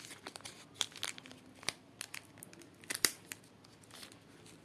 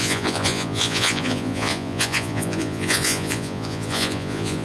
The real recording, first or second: first